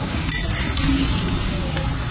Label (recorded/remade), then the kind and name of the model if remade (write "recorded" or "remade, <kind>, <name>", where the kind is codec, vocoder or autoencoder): recorded